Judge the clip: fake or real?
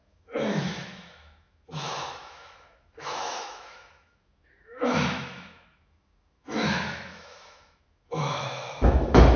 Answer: fake